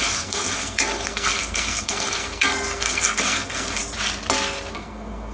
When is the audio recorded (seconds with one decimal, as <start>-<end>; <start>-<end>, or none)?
3.8-4.7